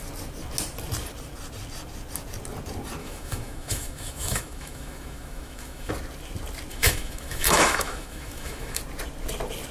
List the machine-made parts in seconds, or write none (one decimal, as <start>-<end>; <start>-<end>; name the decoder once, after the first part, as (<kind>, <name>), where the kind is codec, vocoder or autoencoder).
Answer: 3.0-5.9 (autoencoder, DAC-VAE); 6.7-8.8